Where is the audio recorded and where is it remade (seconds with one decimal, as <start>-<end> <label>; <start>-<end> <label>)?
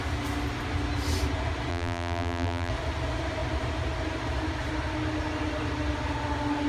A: 0.0-1.7 recorded; 1.7-2.7 remade; 2.7-6.7 recorded